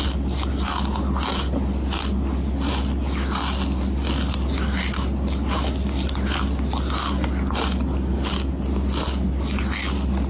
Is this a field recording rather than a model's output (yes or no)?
yes